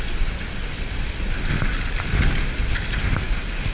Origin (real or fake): real